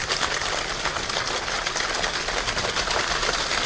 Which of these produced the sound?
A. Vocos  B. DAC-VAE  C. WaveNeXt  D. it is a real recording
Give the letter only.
D